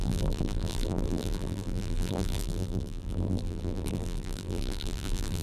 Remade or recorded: remade